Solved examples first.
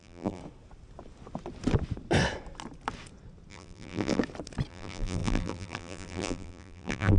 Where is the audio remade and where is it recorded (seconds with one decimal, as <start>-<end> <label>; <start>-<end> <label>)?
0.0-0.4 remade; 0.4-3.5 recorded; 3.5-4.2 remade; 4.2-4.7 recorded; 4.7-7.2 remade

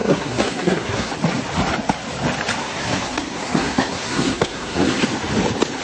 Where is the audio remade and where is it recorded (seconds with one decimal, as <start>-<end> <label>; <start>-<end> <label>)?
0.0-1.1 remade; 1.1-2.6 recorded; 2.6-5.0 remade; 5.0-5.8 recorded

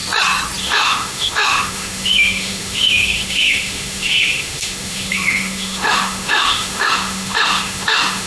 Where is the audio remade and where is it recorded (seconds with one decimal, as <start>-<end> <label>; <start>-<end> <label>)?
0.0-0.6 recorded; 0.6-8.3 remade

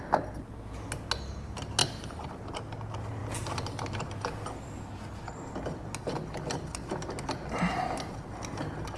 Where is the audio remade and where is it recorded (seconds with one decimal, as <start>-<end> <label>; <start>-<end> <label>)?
0.0-1.8 recorded; 1.8-2.6 remade; 2.6-9.0 recorded

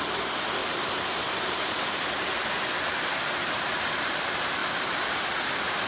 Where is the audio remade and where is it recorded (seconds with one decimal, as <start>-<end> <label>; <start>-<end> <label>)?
0.0-0.6 recorded; 0.6-4.1 remade; 4.1-5.9 recorded

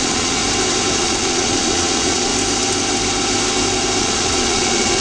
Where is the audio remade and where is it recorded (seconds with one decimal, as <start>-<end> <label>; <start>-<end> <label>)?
0.0-0.4 remade; 0.4-1.0 recorded; 1.0-2.3 remade; 2.3-4.0 recorded; 4.0-5.0 remade

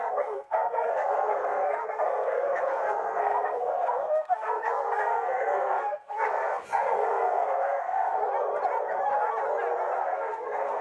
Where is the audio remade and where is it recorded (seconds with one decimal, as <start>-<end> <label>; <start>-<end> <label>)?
0.0-8.2 remade; 8.2-10.0 recorded; 10.0-10.8 remade